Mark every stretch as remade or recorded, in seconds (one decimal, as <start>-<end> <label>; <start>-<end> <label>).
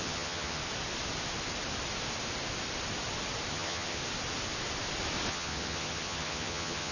0.0-0.6 remade; 0.6-3.5 recorded; 3.5-4.0 remade; 4.0-5.3 recorded; 5.3-6.9 remade